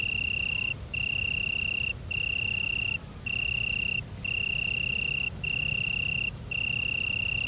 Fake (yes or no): no